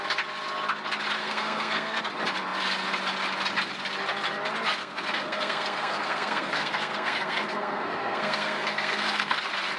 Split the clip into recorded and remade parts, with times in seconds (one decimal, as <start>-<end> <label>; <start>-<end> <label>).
0.0-1.2 recorded; 1.2-2.0 remade; 2.0-4.8 recorded; 4.8-9.4 remade; 9.4-9.8 recorded